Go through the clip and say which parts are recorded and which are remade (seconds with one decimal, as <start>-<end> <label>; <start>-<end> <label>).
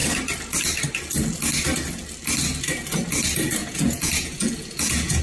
0.0-3.6 recorded; 3.6-5.2 remade